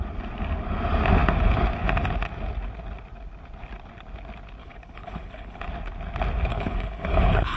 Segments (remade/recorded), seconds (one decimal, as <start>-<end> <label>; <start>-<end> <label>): 0.0-4.6 recorded; 4.6-5.6 remade; 5.6-6.5 recorded; 6.5-7.6 remade